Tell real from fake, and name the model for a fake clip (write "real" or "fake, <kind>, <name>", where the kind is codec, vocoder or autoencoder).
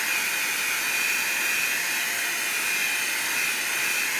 real